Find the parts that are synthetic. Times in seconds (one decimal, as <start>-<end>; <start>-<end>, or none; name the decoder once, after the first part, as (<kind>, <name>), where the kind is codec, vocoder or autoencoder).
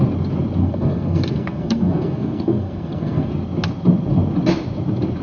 0.6-3.3 (codec, SNAC)